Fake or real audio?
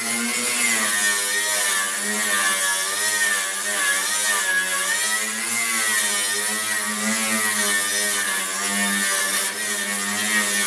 real